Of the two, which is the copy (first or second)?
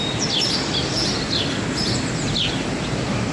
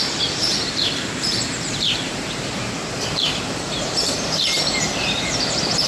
second